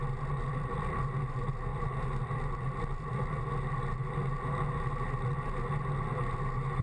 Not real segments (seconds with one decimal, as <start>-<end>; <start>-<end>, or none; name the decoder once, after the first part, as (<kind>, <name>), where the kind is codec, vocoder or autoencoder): 1.7-3.4 (vocoder, BigVGAN v2)